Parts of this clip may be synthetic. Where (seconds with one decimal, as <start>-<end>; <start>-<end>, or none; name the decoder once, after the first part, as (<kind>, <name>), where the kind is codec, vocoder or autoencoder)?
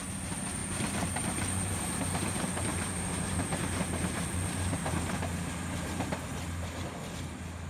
0.6-5.2 (vocoder, BigVGAN v2)